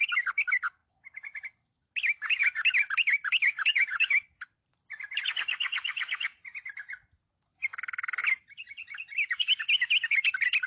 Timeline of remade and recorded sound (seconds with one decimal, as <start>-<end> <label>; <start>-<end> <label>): 0.0-2.4 recorded; 2.4-4.9 remade; 4.9-8.2 recorded; 8.2-9.5 remade; 9.5-10.7 recorded